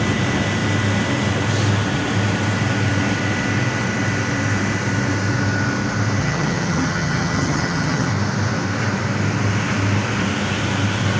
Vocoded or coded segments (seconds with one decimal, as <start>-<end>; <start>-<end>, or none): 6.2-8.1